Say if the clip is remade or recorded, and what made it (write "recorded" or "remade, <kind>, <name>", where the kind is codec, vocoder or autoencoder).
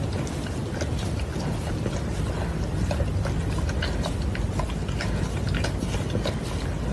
recorded